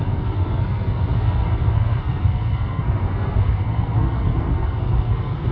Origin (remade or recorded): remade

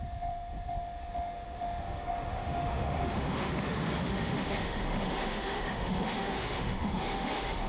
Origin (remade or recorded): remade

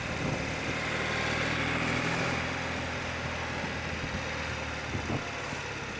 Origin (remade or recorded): recorded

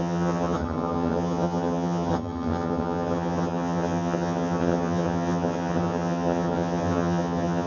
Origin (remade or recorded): remade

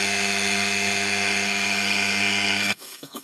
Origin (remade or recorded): remade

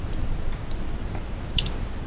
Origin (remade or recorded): recorded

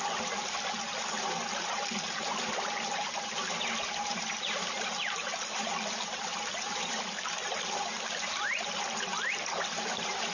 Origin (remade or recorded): recorded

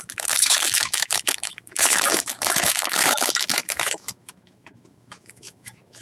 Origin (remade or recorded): remade